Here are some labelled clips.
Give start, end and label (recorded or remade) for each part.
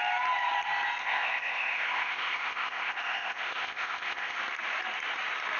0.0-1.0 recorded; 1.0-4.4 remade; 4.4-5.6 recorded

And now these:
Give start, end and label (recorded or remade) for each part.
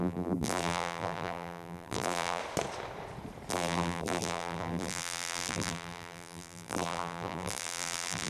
0.0-2.4 remade; 2.4-3.5 recorded; 3.5-8.3 remade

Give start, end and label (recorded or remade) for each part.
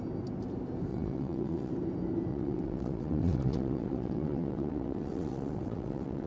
0.0-0.9 recorded; 0.9-1.7 remade; 1.7-2.3 recorded; 2.3-6.3 remade